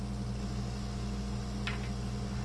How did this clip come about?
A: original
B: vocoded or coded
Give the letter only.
A